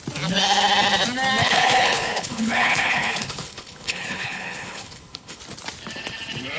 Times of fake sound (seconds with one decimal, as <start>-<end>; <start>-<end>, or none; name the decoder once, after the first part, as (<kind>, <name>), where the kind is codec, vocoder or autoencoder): 1.4-5.4 (codec, HILCodec)